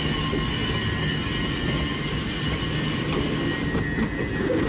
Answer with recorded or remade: recorded